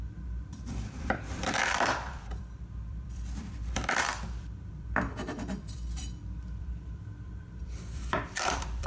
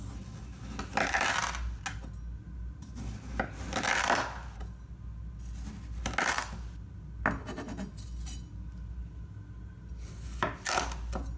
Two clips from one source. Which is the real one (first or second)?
second